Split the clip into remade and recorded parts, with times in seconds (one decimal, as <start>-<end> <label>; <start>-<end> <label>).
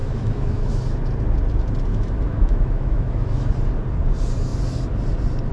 0.0-0.7 remade; 0.7-1.9 recorded; 1.9-3.5 remade; 3.5-5.5 recorded